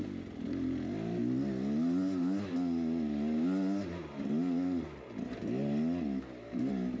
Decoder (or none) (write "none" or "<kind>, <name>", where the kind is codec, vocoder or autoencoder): none